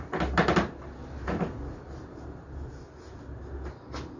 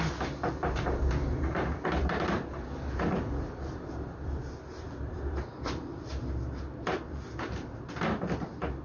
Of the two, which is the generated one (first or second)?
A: second